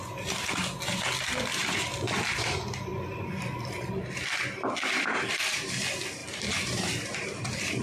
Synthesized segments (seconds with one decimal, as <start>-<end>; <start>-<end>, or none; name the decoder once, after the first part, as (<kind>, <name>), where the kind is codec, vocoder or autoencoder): 1.6-2.2 (vocoder, BigVGAN v2); 6.2-7.8